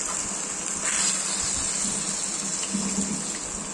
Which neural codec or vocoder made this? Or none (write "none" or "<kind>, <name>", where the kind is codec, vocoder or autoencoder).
none